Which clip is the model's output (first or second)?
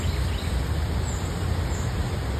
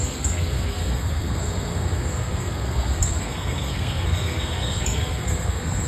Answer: second